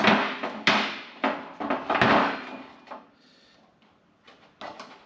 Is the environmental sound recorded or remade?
recorded